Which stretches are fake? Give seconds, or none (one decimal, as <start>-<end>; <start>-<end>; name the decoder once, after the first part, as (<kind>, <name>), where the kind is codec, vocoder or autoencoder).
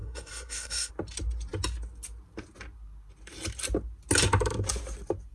0.0-0.9 (codec, SNAC)